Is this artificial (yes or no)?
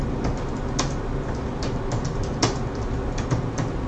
no